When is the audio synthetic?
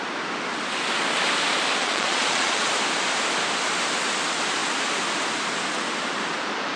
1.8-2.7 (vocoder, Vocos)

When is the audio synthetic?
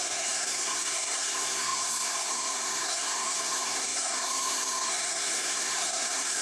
0.0-6.4 (codec, SNAC)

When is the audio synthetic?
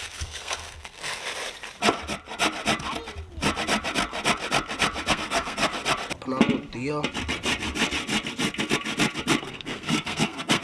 0.0-1.2 (codec, SNAC); 5.1-5.7; 9.4-10.6